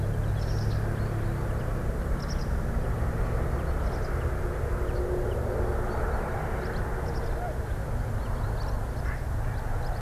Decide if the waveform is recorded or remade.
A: recorded